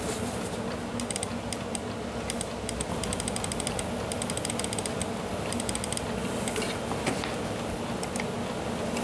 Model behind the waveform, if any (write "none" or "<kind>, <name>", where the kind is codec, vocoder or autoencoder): none